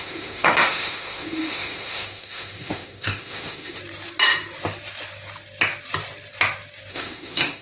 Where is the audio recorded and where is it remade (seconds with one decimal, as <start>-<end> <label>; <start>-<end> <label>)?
0.0-3.8 remade; 3.8-6.9 recorded; 6.9-7.6 remade